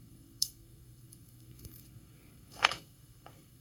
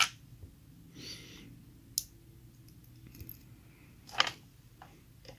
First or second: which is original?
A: second